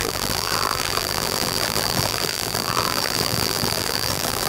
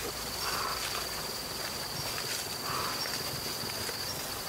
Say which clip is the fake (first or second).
first